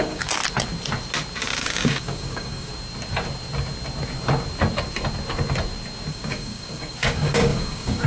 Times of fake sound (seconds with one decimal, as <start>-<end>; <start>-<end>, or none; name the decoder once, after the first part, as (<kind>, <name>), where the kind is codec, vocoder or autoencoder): 0.0-0.4 (codec, DAC); 1.4-2.7; 6.1-8.1